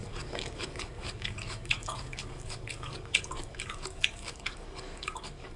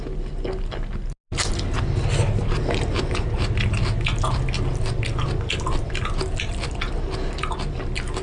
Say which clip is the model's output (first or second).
first